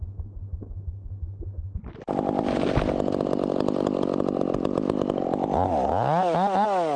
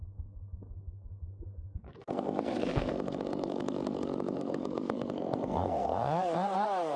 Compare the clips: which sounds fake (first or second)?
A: second